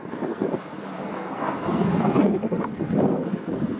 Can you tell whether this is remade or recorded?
remade